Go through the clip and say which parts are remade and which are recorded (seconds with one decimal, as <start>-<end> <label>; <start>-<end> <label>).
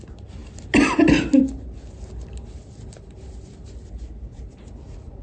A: 0.0-5.2 recorded